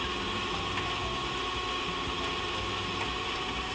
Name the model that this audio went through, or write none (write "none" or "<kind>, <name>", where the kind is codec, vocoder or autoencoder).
none